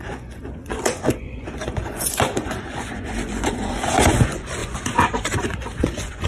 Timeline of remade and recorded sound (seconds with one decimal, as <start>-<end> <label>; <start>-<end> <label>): 0.0-6.3 remade